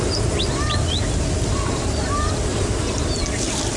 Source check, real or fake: real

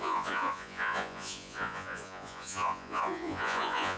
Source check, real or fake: fake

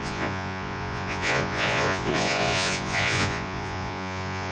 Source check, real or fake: fake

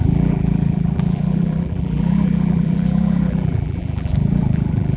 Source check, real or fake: fake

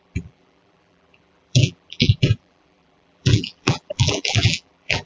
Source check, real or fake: fake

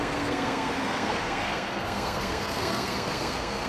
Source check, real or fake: fake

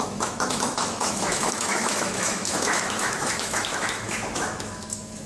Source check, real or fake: fake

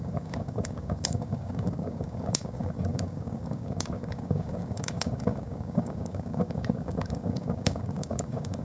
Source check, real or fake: fake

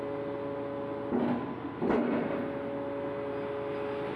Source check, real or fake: real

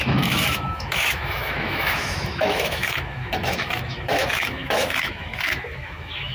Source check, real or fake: fake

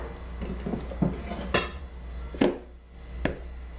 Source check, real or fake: real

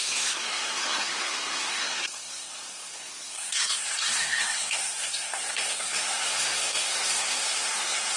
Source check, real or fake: fake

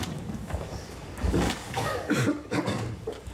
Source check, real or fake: fake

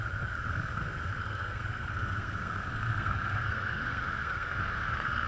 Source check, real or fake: fake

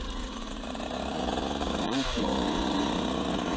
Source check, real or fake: fake